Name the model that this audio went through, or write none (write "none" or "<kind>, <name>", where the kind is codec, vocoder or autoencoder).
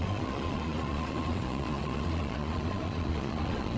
vocoder, Vocos